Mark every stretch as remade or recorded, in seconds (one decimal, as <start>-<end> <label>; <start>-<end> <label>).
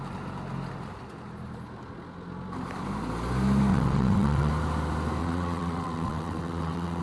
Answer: 0.0-3.7 recorded; 3.7-4.5 remade; 4.5-5.2 recorded; 5.2-7.0 remade